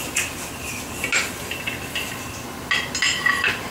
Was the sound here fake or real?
real